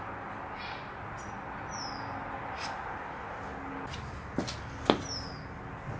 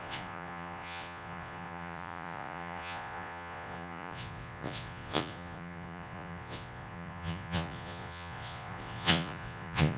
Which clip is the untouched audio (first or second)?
first